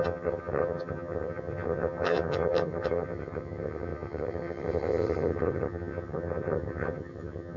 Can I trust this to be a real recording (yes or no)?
no